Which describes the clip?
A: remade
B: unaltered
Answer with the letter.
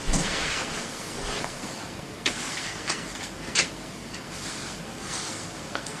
A